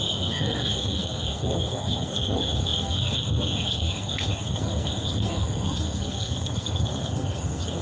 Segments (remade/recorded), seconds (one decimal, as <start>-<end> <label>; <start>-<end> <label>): 0.0-7.8 remade